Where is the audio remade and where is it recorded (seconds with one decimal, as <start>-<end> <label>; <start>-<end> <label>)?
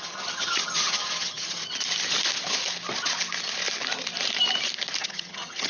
0.0-1.6 remade; 1.6-5.0 recorded; 5.0-5.7 remade